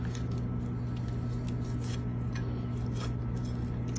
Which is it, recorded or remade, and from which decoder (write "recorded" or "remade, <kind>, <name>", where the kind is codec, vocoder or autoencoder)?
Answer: recorded